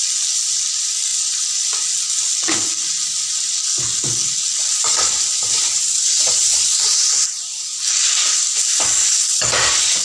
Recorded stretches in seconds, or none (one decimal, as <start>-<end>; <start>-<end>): 0.0-4.5; 8.5-10.0